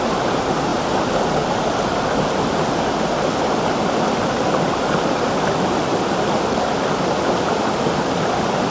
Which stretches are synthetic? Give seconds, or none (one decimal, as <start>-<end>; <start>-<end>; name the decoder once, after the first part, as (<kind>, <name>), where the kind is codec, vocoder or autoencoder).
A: none